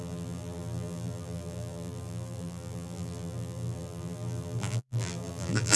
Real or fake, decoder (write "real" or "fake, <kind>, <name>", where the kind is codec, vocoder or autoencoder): fake, vocoder, BigVGAN v2